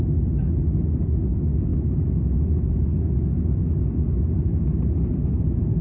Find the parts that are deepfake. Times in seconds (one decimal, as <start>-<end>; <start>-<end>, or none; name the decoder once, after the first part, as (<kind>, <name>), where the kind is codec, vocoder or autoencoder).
none